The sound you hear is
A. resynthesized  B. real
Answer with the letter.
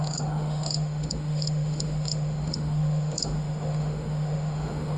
A